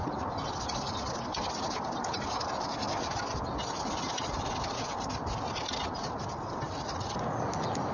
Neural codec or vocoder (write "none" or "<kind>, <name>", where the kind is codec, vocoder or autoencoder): none